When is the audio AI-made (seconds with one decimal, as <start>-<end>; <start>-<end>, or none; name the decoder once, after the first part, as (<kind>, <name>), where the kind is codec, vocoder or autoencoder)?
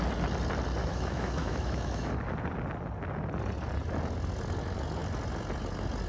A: 0.8-2.1 (autoencoder, DAC-VAE)